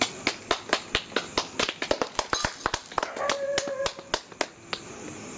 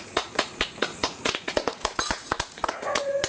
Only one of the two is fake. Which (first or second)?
second